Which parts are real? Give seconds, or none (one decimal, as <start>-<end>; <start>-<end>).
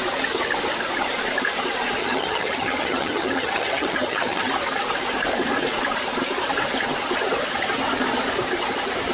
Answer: 0.0-2.0; 4.5-9.1